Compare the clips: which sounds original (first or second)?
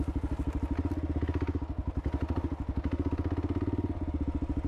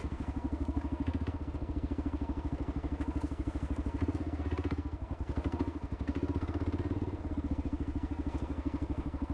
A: first